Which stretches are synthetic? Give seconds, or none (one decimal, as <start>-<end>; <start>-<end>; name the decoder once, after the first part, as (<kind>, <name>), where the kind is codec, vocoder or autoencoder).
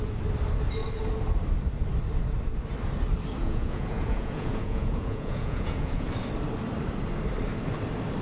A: 3.4-6.1 (vocoder, Vocos)